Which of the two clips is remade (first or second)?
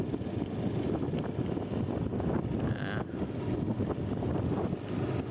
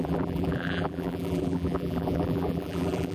second